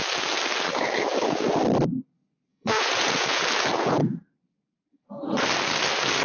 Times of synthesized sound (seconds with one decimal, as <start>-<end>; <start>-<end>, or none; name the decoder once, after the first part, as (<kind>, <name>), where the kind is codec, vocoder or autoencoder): 2.5-3.4 (vocoder, Vocos); 4.9-5.4